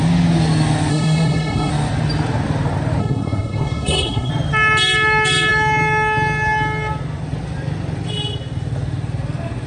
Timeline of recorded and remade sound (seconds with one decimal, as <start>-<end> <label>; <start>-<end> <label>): 0.0-0.9 recorded; 0.9-1.7 remade; 1.7-3.0 recorded; 3.0-4.3 remade; 4.3-9.7 recorded